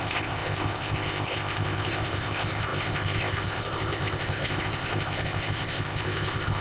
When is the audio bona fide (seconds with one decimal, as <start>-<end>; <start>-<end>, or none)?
none